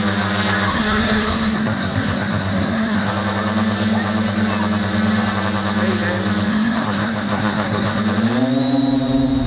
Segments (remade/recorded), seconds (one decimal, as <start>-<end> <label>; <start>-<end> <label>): 0.0-0.7 recorded; 0.7-3.1 remade; 3.1-6.5 recorded; 6.5-8.0 remade; 8.0-9.5 recorded